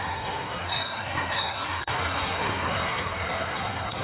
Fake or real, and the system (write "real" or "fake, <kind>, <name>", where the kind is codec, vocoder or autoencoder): fake, codec, SNAC